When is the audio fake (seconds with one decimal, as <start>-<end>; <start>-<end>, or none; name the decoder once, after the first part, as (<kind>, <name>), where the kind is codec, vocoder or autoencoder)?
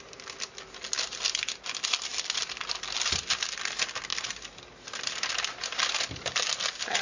none